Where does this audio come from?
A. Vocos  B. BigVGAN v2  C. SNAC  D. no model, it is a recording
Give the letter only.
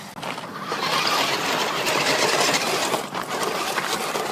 D